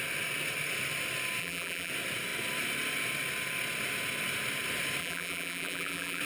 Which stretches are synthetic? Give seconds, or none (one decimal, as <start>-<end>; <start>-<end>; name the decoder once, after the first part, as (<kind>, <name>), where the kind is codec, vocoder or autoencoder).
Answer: 1.4-1.9 (vocoder, BigVGAN v2); 5.0-6.2